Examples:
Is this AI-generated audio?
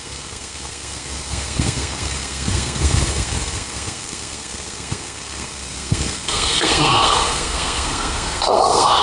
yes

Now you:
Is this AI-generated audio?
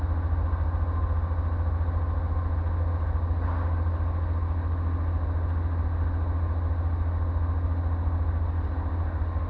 no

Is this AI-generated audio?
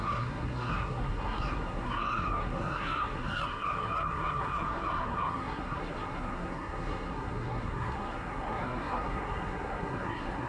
yes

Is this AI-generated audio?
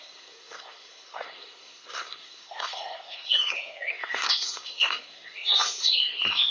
yes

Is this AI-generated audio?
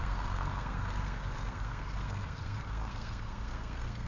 yes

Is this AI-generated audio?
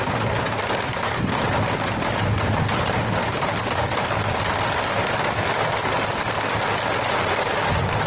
no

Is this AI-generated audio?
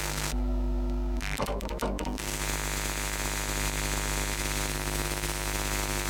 yes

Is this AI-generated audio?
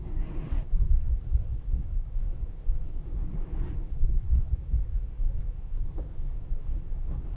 yes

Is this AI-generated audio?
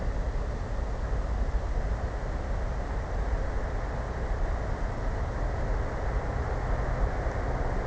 no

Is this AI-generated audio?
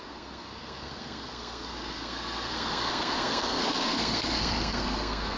yes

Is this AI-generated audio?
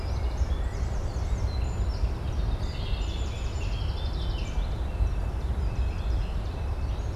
no